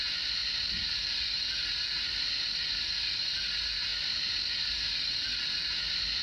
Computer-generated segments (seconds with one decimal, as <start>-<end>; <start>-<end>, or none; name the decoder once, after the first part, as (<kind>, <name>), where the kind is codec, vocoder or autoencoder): none